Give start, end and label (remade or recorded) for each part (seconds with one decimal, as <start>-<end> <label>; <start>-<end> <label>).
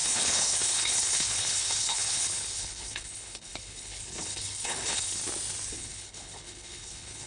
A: 0.0-5.2 remade; 5.2-5.7 recorded; 5.7-7.3 remade